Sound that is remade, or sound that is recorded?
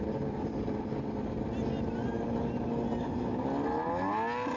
recorded